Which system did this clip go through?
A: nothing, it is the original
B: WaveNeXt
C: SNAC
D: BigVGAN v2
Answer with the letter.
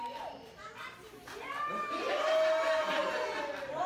A